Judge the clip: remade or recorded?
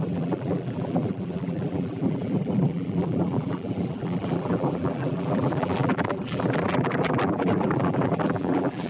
remade